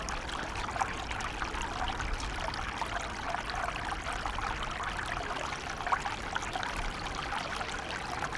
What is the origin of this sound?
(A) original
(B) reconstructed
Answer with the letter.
A